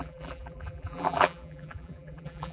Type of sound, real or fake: fake